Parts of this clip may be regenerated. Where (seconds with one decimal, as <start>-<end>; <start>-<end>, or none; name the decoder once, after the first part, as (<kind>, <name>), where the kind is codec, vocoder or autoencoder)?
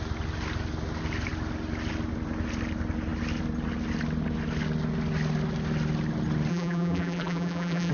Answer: 6.5-7.9 (vocoder, BigVGAN v2)